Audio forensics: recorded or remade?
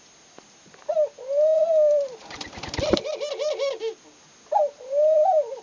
recorded